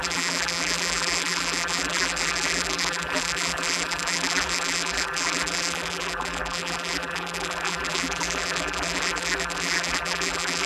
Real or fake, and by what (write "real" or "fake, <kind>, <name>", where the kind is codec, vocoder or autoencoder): fake, vocoder, BigVGAN v2